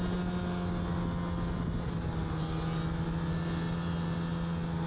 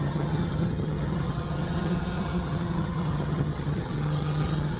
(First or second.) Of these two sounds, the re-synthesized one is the second